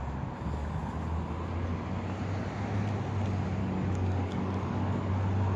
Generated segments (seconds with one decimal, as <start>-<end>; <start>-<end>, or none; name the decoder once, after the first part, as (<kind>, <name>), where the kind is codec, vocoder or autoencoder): 3.6-5.1 (codec, DAC)